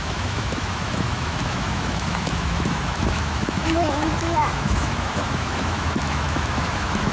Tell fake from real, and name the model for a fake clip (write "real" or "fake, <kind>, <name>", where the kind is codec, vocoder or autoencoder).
fake, autoencoder, DAC-VAE